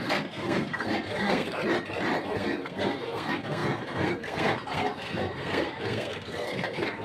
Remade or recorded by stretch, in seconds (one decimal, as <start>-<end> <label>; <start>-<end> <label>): 0.0-1.6 remade; 1.6-2.2 recorded; 2.2-7.0 remade